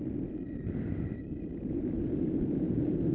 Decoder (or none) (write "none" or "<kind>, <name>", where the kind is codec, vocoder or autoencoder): none